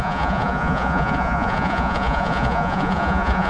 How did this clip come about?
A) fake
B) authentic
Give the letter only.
A